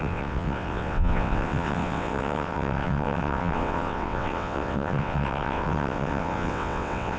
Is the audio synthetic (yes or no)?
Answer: yes